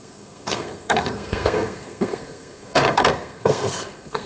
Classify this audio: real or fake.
fake